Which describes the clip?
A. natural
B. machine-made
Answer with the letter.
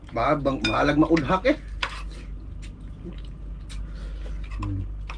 A